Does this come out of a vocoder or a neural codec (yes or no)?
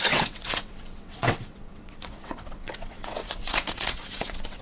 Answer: yes